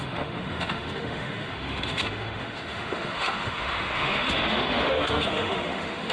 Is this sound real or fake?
fake